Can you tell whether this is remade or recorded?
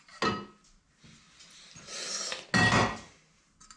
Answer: recorded